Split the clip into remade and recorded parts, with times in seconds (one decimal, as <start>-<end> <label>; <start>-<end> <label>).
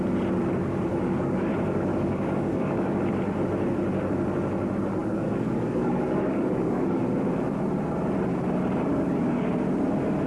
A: 0.0-0.9 recorded; 0.9-1.5 remade; 1.5-1.9 recorded; 1.9-3.0 remade; 3.0-5.0 recorded; 5.0-7.0 remade; 7.0-8.9 recorded; 8.9-9.5 remade; 9.5-10.3 recorded